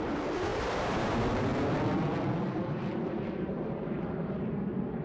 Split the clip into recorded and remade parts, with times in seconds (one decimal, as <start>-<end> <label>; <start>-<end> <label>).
0.0-1.5 remade; 1.5-2.4 recorded; 2.4-5.0 remade